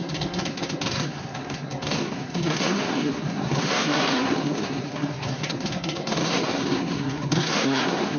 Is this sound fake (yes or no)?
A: yes